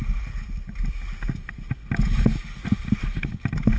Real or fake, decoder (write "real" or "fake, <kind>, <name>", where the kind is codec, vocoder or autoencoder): real